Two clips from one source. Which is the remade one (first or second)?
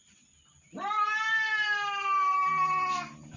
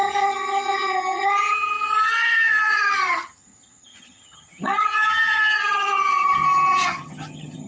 second